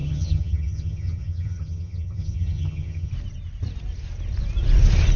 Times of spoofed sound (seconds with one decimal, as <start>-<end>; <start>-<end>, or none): 0.0-3.1